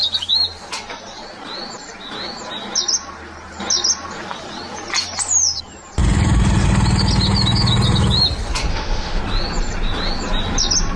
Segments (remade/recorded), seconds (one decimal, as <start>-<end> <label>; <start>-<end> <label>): 0.0-8.7 recorded; 8.7-9.2 remade; 9.2-11.0 recorded